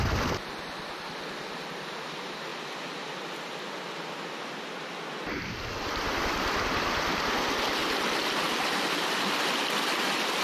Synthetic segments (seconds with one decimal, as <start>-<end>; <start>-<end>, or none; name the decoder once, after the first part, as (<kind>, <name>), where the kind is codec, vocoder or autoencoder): none